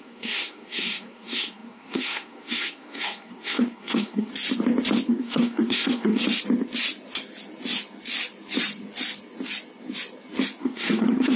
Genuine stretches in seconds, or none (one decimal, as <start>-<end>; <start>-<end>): 4.3-5.1; 6.2-10.6